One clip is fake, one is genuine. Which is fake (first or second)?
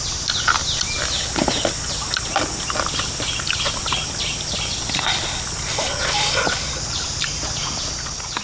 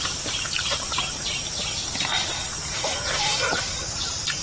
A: second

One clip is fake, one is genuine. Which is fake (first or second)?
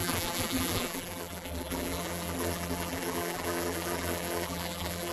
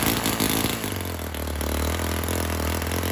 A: first